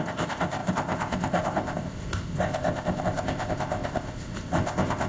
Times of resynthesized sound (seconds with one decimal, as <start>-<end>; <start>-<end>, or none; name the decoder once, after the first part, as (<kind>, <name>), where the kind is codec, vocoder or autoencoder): 0.0-5.1 (codec, ZipCodec)